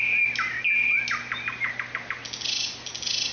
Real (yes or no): yes